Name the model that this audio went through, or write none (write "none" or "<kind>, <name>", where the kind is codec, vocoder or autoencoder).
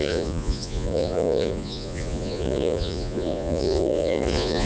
vocoder, Vocos